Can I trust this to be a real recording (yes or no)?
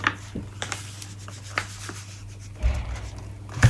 yes